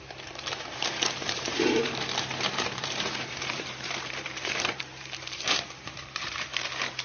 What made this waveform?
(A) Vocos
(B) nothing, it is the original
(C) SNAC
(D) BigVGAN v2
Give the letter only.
D